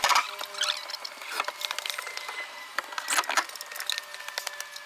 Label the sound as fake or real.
real